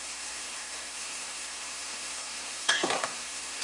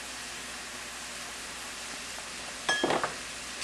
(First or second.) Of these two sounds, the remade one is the first